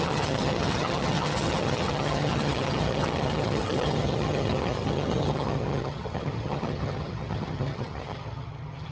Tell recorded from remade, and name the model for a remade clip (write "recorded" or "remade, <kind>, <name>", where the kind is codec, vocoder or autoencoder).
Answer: remade, vocoder, HiFi-GAN